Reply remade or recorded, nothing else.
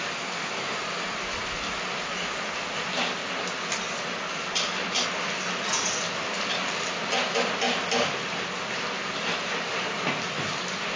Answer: recorded